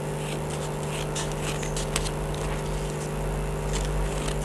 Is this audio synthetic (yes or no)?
no